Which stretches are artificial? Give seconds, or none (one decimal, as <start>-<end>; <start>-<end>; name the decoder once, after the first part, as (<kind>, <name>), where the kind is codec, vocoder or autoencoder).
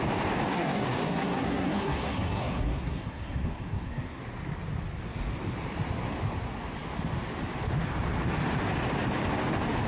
0.5-4.2 (codec, SNAC)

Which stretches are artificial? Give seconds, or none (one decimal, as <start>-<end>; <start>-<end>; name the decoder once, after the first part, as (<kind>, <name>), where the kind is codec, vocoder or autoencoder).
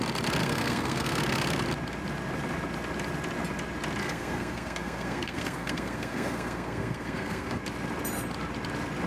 0.4-1.2 (codec, SNAC); 4.0-7.6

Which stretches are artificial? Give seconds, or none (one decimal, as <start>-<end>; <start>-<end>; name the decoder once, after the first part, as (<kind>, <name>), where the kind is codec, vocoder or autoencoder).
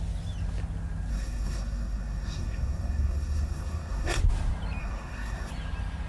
1.1-4.2 (codec, SNAC); 4.8-5.5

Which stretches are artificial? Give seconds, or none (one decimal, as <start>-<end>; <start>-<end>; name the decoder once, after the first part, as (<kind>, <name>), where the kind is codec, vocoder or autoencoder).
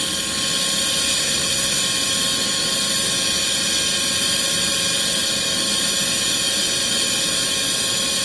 1.1-1.8 (codec, SNAC)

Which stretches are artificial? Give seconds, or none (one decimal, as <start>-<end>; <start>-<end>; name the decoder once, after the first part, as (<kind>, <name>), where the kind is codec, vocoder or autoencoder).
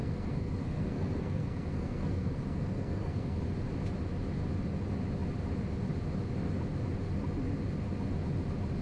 0.0-3.4 (codec, SNAC)